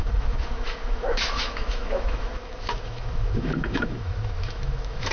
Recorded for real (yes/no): no